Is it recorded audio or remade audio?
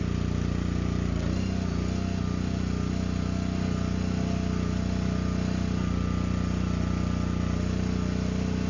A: recorded